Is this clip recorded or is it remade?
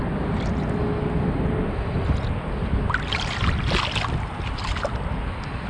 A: recorded